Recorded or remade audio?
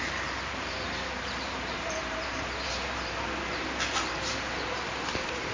remade